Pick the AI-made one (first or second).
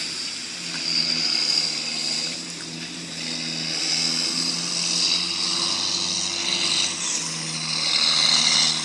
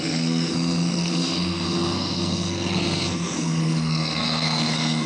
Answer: second